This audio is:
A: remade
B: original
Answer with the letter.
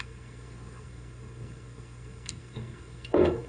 A